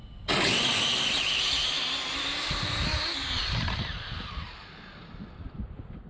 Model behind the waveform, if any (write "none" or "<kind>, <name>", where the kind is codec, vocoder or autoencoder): none